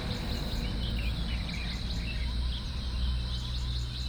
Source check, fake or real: real